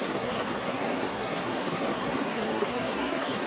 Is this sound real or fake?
fake